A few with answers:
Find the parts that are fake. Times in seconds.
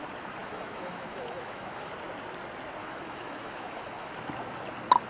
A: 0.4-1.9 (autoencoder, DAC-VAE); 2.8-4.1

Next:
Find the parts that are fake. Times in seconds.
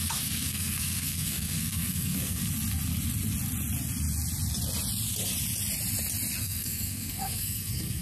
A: 0.0-2.4 (codec, SNAC); 6.4-8.0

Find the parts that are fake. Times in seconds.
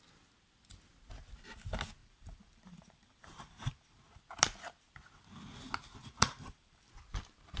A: 2.0-4.2 (vocoder, BigVGAN v2); 6.0-6.9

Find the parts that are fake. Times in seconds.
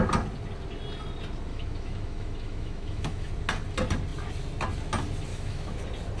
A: 1.5-3.3 (autoencoder, DAC-VAE); 5.3-5.8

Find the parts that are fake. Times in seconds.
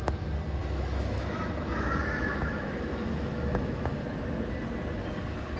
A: 0.6-4.0 (autoencoder, DAC-VAE)